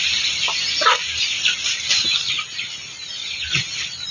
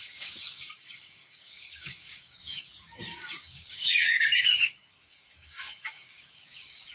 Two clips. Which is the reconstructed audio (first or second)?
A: second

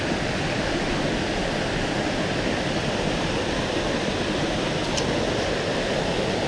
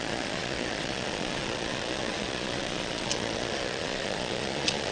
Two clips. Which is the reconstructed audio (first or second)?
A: second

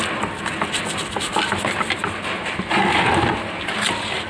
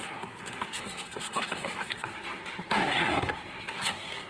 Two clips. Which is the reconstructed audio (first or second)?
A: second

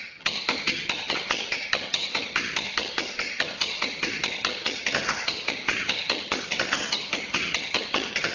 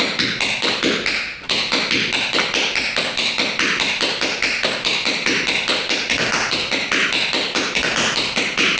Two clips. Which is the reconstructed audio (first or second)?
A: first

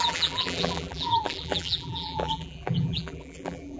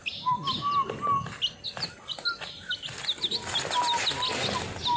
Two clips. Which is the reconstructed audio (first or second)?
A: first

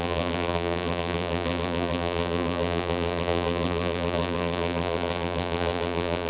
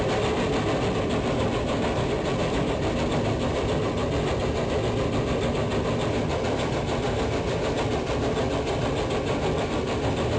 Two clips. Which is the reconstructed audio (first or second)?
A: first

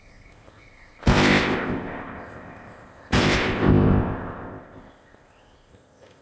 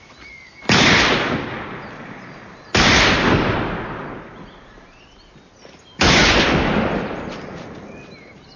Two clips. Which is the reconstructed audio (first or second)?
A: first